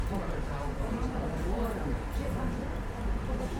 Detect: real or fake fake